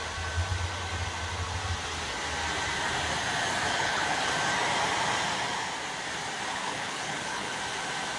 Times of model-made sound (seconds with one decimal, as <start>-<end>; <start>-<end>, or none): 3.7-4.3; 6.5-7.6